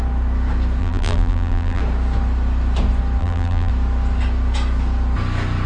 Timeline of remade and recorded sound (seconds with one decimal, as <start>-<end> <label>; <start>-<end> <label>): 0.0-0.8 recorded; 0.8-1.8 remade; 1.8-3.2 recorded; 3.2-3.7 remade; 3.7-5.7 recorded